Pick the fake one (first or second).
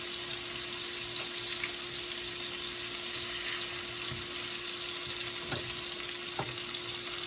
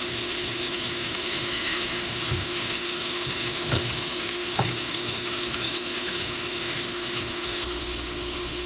second